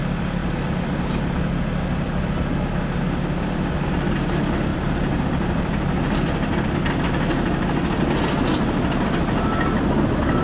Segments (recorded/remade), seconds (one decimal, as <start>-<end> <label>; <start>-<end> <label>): 0.0-4.7 recorded; 4.7-7.0 remade; 7.0-10.4 recorded